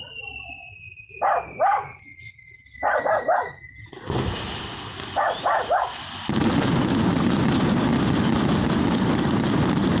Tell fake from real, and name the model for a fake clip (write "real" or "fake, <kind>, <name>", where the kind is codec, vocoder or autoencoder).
real